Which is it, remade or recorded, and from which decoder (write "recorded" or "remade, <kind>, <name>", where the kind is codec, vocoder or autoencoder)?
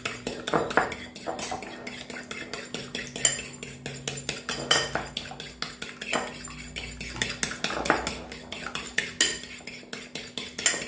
recorded